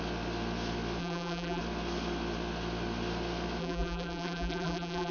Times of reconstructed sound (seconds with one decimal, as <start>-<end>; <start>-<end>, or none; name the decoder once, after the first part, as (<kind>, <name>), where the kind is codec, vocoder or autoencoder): 1.0-1.6 (vocoder, BigVGAN v2); 3.6-5.1